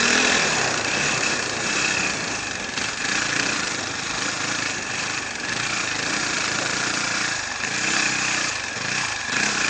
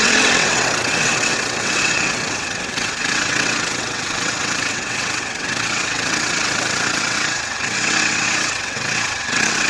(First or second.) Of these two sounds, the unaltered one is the first